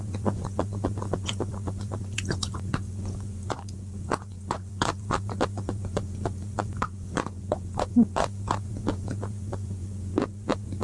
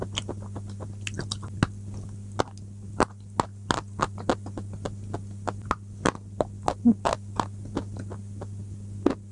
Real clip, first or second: second